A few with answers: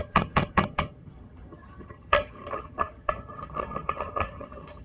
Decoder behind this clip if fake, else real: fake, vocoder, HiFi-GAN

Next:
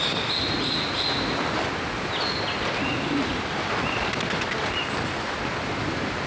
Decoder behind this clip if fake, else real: real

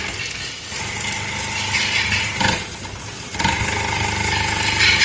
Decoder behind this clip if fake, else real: real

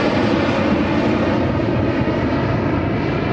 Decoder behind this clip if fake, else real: real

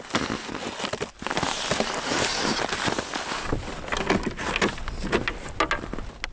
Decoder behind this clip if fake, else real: real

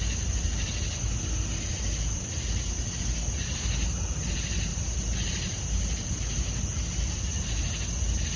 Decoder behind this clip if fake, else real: real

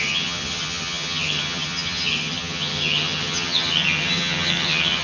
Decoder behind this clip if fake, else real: fake, vocoder, HiFi-GAN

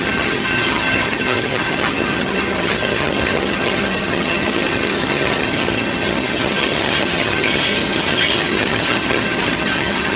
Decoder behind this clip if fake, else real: fake, vocoder, HiFi-GAN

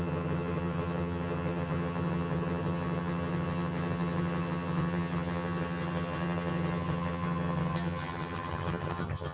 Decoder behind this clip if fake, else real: fake, vocoder, HiFi-GAN